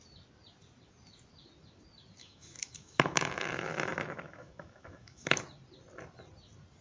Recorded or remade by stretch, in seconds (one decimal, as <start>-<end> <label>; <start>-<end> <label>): 0.0-2.2 recorded; 2.2-5.4 remade; 5.4-6.8 recorded